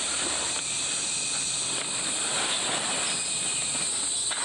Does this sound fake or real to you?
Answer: real